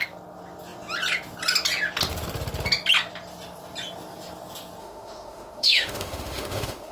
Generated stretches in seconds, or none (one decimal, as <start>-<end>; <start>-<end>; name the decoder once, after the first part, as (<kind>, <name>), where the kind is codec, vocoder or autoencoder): 4.8-6.9 (autoencoder, DAC-VAE)